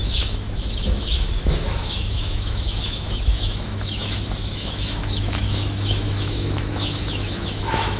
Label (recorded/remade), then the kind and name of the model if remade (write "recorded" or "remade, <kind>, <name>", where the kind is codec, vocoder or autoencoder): remade, autoencoder, DAC-VAE